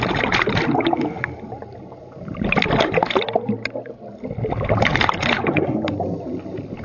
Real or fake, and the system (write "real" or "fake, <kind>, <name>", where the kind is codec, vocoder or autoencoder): real